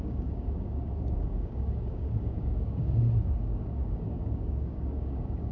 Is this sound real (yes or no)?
no